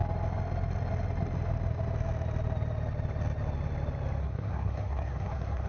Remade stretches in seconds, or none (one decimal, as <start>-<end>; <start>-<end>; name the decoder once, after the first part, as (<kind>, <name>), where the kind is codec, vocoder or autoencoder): 4.2-5.7 (codec, SNAC)